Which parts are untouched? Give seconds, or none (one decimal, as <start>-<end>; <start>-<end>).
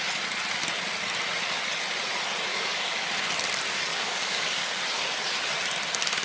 0.0-2.5; 3.2-3.9; 4.7-6.2